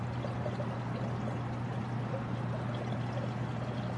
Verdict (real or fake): real